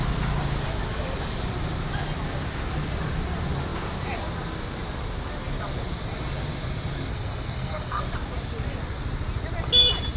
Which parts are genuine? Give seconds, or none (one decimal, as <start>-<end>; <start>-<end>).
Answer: 0.0-7.1; 8.0-10.2